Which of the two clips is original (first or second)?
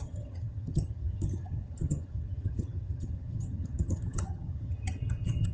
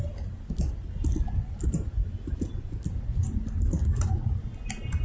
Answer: second